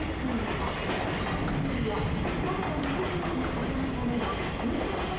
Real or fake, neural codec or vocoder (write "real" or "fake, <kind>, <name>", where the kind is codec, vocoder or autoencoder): real